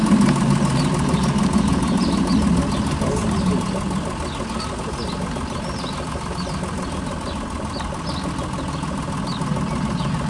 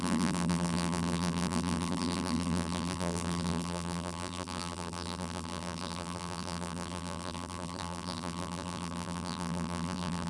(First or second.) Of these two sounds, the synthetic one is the second